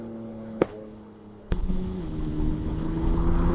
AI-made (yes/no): yes